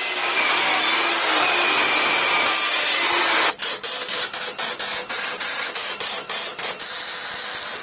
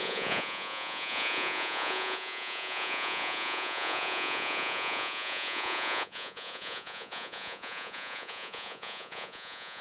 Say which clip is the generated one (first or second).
second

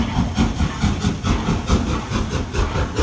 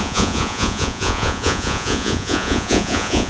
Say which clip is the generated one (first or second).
second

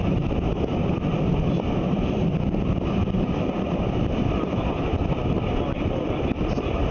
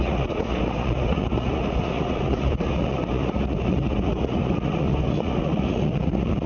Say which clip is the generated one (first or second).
second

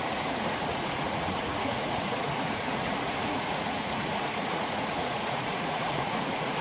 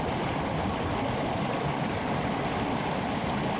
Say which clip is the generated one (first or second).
first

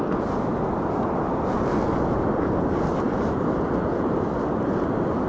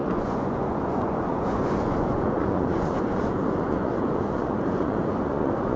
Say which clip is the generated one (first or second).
second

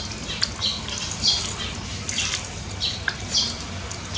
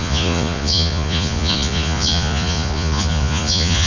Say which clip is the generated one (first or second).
second